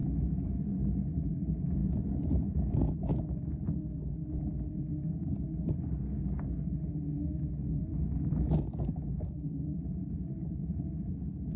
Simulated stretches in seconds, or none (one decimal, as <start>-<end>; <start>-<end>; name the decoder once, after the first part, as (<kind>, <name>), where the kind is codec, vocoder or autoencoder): 0.0-0.7 (autoencoder, DAC-VAE); 1.8-3.5; 6.9-9.3